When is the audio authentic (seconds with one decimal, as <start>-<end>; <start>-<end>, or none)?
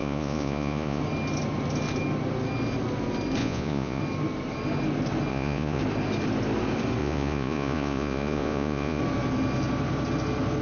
1.0-3.4; 4.0-5.3; 5.8-7.0; 9.0-10.6